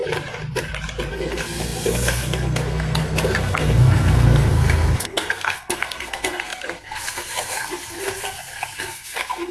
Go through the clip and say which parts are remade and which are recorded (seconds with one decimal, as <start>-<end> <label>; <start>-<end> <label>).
0.0-1.1 recorded; 1.1-9.5 remade